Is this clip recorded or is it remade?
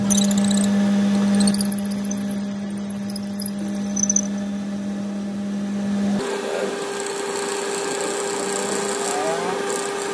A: recorded